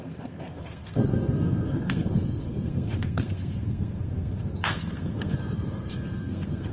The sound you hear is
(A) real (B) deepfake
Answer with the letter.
B